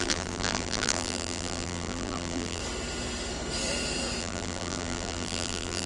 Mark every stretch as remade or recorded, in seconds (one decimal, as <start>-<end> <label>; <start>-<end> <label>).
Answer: 0.0-2.6 remade; 2.6-4.2 recorded; 4.2-5.9 remade